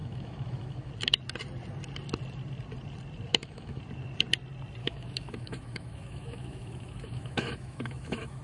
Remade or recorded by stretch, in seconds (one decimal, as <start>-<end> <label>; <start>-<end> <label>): 0.0-0.9 remade; 0.9-3.3 recorded; 3.3-3.8 remade; 3.8-4.8 recorded; 4.8-8.4 remade